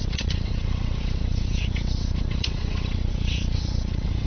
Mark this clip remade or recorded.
remade